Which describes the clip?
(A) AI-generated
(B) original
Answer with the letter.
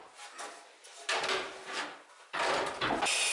B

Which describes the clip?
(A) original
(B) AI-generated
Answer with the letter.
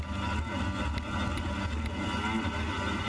A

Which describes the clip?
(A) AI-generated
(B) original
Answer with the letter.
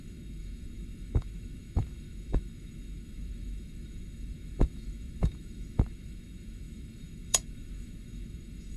A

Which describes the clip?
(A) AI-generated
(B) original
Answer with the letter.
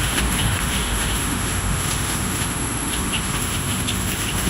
A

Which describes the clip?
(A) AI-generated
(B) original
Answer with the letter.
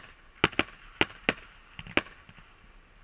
B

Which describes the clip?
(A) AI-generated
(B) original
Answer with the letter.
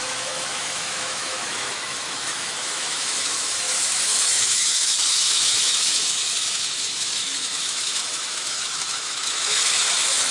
A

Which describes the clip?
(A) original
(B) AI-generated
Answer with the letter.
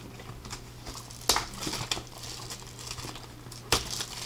A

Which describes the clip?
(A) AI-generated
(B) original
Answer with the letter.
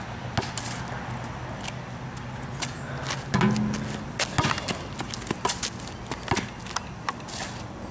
B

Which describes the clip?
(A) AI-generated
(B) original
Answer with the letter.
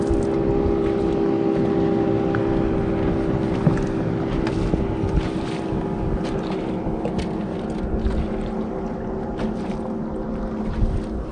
B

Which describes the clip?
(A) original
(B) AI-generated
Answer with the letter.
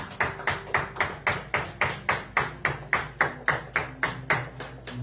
A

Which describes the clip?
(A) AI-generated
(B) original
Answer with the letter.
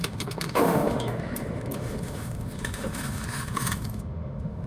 A